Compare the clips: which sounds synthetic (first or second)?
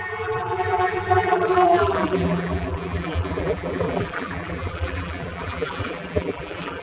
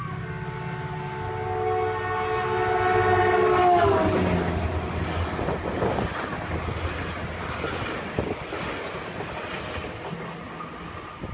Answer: first